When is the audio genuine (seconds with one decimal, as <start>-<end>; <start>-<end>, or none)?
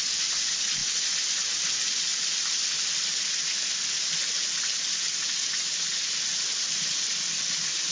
0.0-7.9